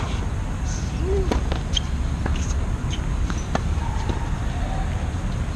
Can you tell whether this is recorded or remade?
recorded